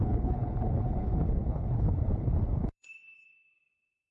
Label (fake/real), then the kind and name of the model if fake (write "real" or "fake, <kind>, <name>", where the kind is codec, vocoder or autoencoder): fake, codec, HILCodec